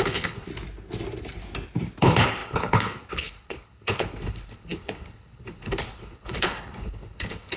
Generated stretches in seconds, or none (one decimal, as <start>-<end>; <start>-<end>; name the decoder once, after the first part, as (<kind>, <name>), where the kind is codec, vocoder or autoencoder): 0.0-0.5 (codec, HILCodec); 2.0-7.6